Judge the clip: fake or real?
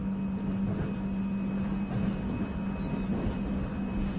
real